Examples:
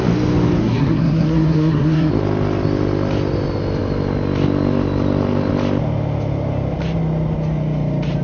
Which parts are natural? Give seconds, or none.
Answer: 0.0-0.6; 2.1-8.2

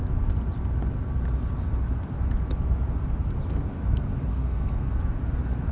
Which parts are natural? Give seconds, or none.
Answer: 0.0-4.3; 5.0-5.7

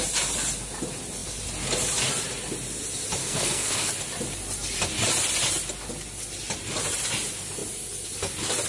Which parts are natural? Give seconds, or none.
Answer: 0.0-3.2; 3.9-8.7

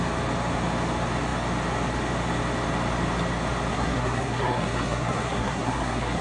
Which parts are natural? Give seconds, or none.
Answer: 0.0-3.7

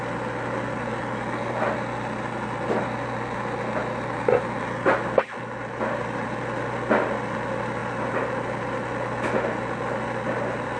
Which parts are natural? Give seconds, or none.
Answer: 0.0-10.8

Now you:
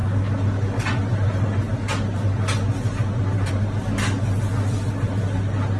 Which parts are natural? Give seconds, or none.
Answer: 0.0-5.8

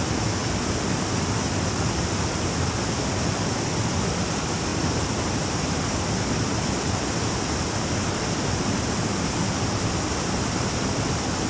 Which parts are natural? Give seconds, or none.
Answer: 0.0-11.5

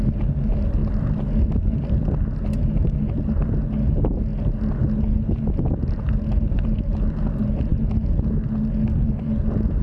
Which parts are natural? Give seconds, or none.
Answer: 0.0-9.8